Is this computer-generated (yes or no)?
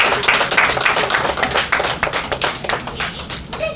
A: no